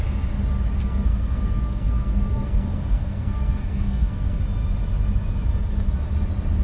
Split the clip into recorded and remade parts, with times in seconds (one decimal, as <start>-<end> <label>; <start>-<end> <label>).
0.0-0.8 recorded; 0.8-4.4 remade; 4.4-6.6 recorded